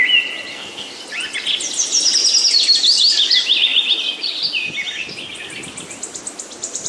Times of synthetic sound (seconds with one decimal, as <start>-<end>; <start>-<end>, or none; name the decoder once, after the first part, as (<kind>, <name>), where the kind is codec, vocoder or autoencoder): 0.5-1.0 (codec, SNAC)